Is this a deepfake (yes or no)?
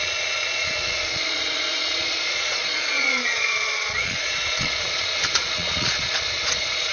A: yes